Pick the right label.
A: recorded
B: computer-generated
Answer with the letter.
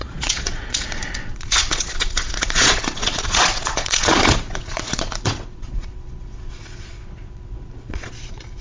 B